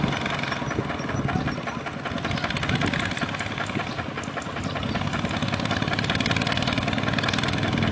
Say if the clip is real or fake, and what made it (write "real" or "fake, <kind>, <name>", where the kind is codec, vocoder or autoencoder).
real